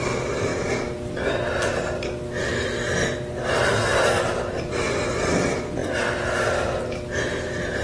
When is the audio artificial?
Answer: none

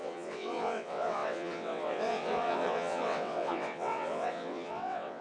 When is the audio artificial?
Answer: 0.0-5.2 (vocoder, WaveNeXt)